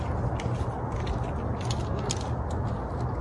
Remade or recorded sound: recorded